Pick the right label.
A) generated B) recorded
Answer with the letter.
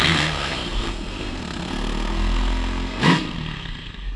A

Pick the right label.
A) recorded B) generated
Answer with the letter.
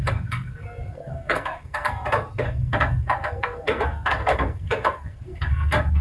B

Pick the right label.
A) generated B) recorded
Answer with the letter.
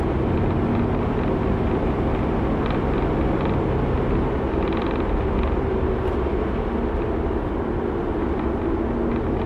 B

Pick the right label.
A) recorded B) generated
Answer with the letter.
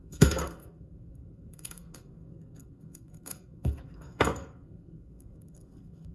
B